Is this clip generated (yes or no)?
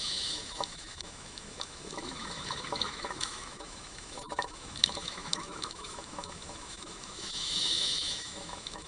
yes